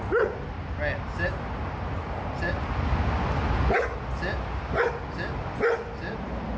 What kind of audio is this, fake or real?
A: real